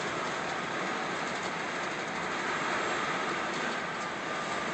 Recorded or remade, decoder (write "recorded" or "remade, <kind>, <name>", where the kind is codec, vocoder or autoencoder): recorded